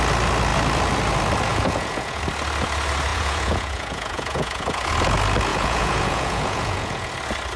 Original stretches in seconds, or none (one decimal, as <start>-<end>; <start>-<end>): 0.0-1.5; 2.2-3.1; 4.9-5.5; 7.1-7.6